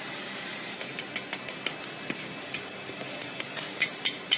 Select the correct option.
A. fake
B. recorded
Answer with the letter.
B